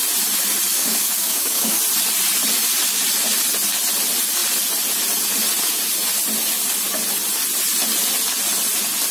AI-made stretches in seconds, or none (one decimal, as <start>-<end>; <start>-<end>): 0.7-1.8

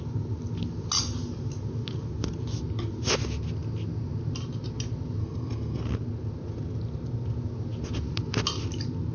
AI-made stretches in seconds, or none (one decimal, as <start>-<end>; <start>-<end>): 5.2-5.8

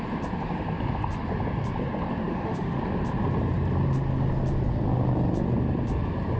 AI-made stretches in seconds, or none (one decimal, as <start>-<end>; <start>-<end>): 2.3-2.8

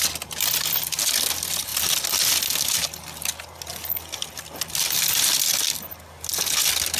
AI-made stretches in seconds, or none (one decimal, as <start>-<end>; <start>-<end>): none

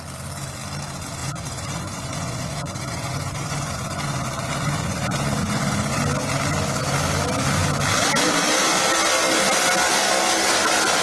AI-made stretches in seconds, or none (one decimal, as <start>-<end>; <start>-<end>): 1.2-6.0

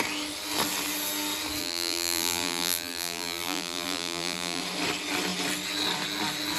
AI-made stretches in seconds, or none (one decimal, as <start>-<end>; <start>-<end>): 1.6-4.6

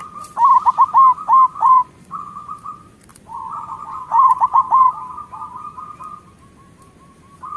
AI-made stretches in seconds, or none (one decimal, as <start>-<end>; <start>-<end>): 1.5-2.5; 3.1-5.0